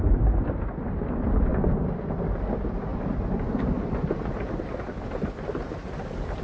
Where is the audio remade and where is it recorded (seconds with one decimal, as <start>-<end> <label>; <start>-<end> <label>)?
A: 0.0-1.5 recorded; 1.5-2.1 remade; 2.1-2.9 recorded; 2.9-3.6 remade; 3.6-6.4 recorded